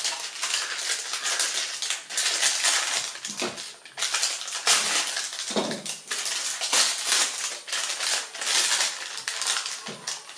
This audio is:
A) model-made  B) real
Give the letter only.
B